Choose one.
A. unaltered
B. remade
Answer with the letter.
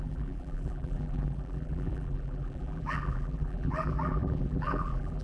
B